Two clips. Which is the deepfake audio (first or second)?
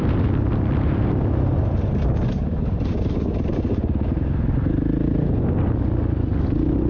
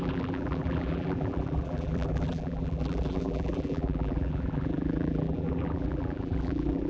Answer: second